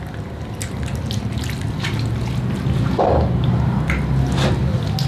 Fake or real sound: real